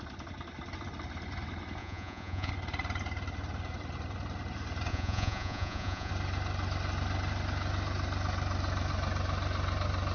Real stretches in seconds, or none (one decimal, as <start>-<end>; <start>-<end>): 0.0-1.8; 2.5-4.9; 6.1-10.1